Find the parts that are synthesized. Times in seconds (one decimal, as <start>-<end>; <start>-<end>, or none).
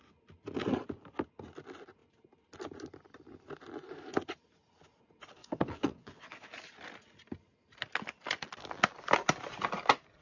5.4-6.5